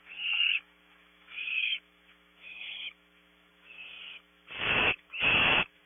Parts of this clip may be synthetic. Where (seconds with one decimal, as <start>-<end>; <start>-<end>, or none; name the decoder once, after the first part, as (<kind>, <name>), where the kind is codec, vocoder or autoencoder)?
0.0-5.9 (autoencoder, DAC-VAE)